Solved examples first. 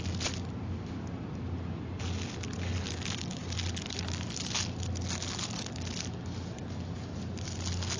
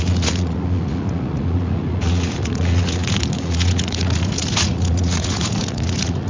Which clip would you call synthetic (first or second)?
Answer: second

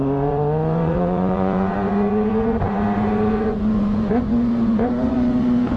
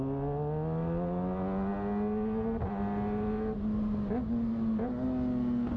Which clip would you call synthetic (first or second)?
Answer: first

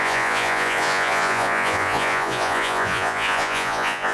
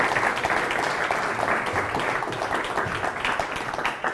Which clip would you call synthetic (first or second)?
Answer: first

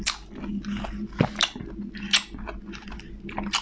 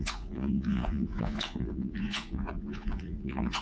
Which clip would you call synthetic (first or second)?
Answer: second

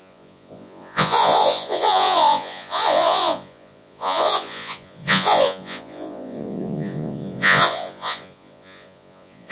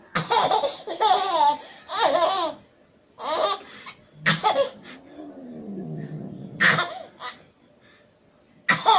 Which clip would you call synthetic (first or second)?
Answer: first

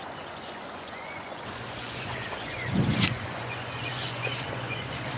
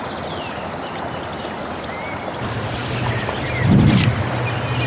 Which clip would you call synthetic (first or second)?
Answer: first